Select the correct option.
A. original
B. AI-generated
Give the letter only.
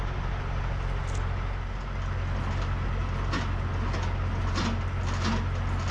A